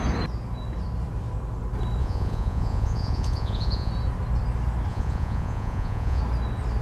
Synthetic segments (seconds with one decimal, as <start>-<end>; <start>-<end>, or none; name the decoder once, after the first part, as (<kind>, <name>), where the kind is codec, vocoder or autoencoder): 2.0-3.9 (vocoder, Vocos); 4.9-6.2